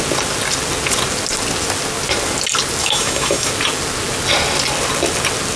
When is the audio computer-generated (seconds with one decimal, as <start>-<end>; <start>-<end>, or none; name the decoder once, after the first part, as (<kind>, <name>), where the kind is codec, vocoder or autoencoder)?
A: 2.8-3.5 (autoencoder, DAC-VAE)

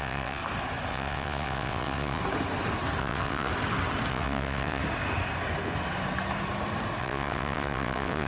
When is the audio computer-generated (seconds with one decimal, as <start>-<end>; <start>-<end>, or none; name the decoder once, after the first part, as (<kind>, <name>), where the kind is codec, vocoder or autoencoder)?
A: 0.0-0.4 (vocoder, WaveNeXt); 0.9-2.2; 3.0-3.5; 4.1-4.8; 7.0-8.3

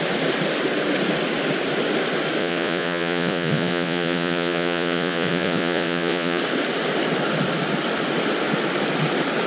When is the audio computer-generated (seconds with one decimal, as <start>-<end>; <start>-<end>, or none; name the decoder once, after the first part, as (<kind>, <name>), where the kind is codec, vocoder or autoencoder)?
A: 2.4-6.4 (vocoder, Vocos)

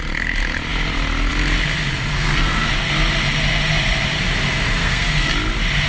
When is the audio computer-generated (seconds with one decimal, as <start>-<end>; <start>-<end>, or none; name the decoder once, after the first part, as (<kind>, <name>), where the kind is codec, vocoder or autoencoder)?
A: 2.1-2.7 (codec, SNAC); 4.8-5.3

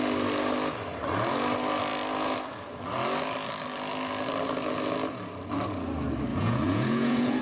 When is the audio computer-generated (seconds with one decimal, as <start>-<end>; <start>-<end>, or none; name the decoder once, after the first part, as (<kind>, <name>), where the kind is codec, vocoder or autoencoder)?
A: 6.3-7.4 (vocoder, Vocos)

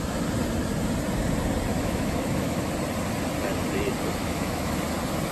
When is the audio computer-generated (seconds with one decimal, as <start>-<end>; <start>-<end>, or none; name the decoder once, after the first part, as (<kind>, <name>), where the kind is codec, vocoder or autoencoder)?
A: 1.7-2.7 (autoencoder, DAC-VAE); 4.2-4.8

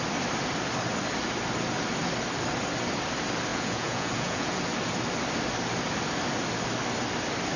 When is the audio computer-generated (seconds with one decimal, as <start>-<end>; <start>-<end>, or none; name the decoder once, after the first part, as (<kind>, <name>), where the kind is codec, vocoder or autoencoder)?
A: 3.5-4.6 (vocoder, Vocos)